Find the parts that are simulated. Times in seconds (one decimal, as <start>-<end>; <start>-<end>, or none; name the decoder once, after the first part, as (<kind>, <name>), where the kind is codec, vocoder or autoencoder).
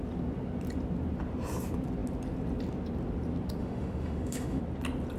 3.6-4.6 (autoencoder, DAC-VAE)